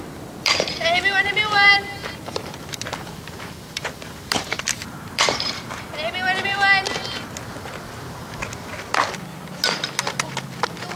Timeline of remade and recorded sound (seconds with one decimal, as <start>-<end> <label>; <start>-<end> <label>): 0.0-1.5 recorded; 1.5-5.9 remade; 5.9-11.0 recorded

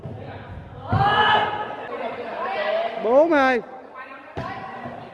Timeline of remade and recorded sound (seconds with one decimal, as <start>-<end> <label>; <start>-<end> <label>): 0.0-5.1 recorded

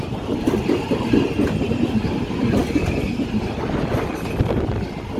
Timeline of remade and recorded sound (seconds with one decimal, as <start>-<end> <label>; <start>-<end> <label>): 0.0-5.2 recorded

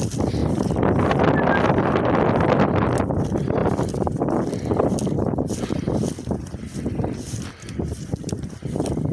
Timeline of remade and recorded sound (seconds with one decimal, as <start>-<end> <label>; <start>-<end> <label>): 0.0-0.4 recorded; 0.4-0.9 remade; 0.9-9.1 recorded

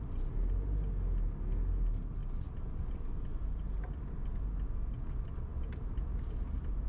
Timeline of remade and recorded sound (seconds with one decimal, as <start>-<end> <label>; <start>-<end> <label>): 0.0-6.9 recorded

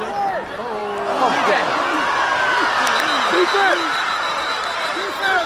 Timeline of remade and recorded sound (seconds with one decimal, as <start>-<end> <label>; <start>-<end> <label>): 0.0-4.3 recorded; 4.3-5.5 remade

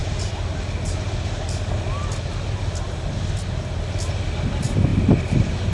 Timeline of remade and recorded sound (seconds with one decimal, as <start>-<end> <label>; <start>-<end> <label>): 0.0-5.7 recorded

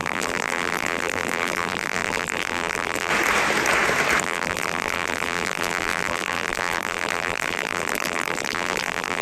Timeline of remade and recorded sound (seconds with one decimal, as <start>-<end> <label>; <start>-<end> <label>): 0.0-3.1 remade; 3.1-4.2 recorded; 4.2-9.2 remade